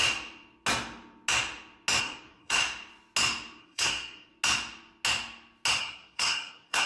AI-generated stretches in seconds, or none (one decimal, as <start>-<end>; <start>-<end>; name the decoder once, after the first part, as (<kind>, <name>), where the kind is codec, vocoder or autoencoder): 2.0-2.6 (codec, SNAC); 3.6-4.3; 5.8-6.9